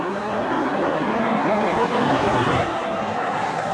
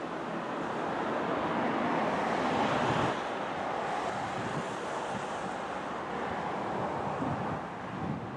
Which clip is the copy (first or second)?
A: first